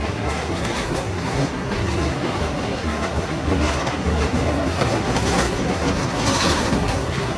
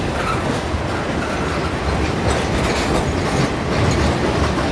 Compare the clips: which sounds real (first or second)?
second